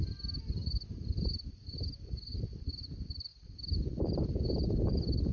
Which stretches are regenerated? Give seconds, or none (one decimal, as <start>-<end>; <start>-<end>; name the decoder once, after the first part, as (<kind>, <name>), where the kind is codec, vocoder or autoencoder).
none